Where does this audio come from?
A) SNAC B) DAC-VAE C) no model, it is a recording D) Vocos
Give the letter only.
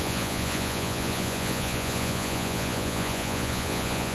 D